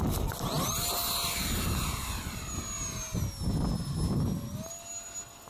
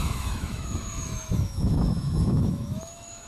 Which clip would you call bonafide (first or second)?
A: first